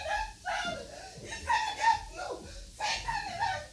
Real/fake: real